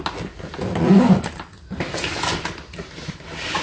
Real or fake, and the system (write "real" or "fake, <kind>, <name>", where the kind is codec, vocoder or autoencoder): real